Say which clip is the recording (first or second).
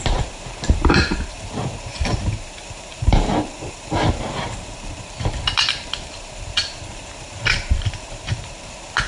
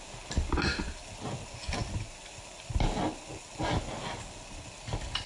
second